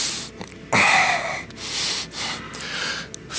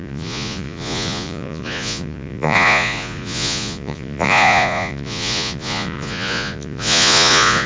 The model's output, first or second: second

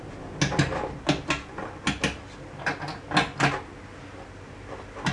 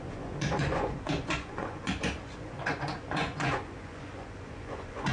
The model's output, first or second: second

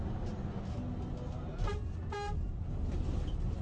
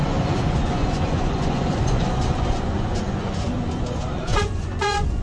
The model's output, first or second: second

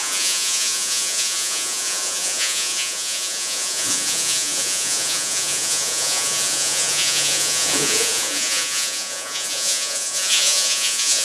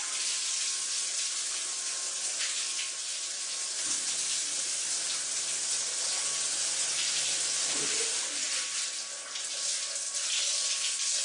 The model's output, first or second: first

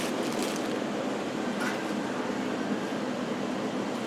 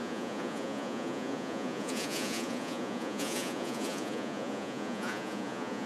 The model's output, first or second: second